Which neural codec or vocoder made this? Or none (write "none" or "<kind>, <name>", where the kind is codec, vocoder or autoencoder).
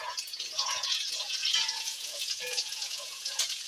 vocoder, Vocos